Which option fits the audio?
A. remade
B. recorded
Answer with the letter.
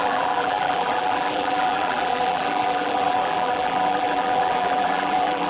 A